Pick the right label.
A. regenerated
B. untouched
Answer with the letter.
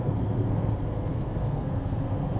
A